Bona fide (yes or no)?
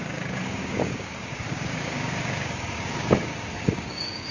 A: no